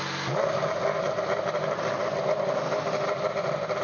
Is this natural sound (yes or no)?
yes